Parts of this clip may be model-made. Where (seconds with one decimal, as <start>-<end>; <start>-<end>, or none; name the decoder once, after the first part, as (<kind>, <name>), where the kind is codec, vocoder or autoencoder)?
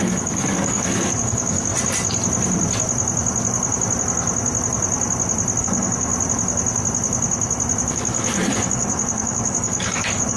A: 0.0-1.7 (codec, DAC); 5.6-6.1; 7.9-10.4